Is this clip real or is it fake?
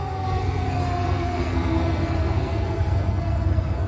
fake